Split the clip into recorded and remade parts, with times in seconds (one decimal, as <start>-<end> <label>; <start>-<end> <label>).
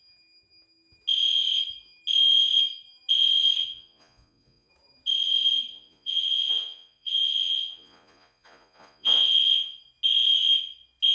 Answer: 0.0-3.6 recorded; 3.6-4.7 remade; 4.7-5.7 recorded; 5.7-9.8 remade; 9.8-11.1 recorded